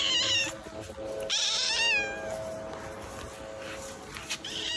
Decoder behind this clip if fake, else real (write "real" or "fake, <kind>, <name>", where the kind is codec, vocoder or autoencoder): real